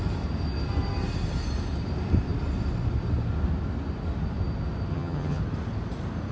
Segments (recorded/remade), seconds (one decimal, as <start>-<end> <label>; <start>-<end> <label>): 0.0-4.9 recorded; 4.9-5.4 remade; 5.4-6.3 recorded